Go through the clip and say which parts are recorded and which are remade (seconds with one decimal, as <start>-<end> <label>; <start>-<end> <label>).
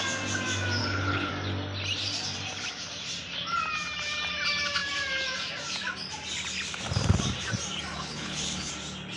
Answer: 0.0-0.8 recorded; 0.8-1.3 remade; 1.3-7.9 recorded; 7.9-8.7 remade; 8.7-9.2 recorded